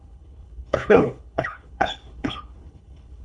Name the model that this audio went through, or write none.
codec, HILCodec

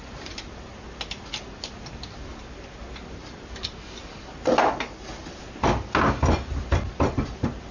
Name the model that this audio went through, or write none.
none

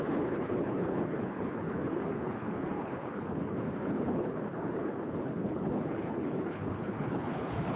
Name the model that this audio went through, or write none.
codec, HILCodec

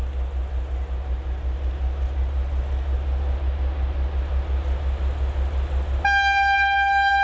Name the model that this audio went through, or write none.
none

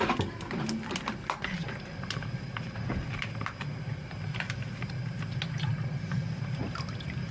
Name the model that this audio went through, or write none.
none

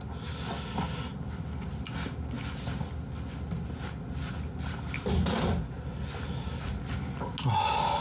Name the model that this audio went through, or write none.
none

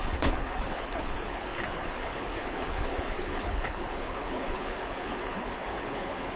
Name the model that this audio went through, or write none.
codec, HILCodec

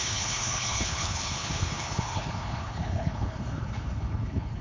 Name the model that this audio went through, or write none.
codec, HILCodec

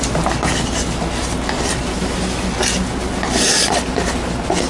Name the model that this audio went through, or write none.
none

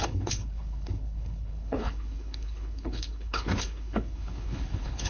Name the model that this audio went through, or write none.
codec, HILCodec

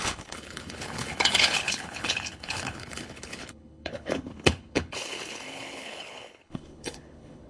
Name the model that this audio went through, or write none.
codec, HILCodec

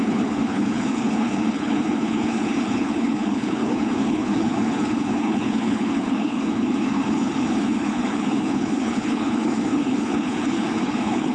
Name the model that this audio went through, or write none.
codec, HILCodec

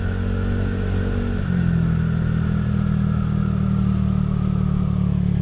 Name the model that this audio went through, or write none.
none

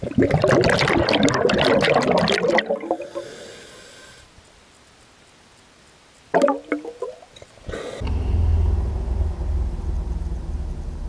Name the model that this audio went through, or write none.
none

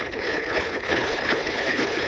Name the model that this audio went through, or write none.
codec, HILCodec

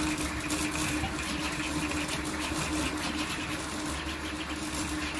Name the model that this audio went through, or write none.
none